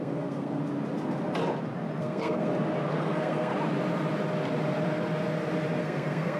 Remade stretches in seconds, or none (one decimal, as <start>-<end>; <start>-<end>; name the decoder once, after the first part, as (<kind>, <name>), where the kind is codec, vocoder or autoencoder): 0.0-0.6 (codec, SNAC); 2.0-2.5; 3.0-3.5; 5.8-6.4